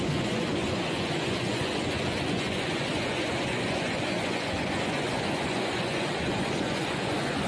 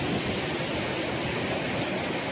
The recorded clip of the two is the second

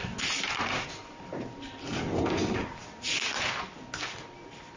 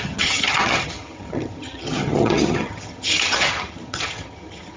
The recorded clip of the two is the first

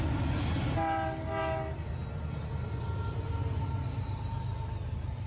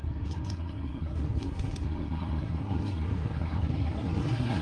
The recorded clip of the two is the first